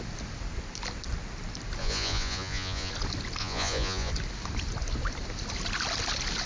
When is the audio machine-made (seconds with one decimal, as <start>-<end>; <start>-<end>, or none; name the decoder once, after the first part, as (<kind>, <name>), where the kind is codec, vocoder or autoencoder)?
1.8-2.9 (vocoder, Vocos); 3.4-4.1